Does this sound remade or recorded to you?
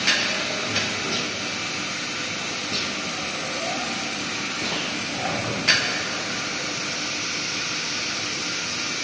recorded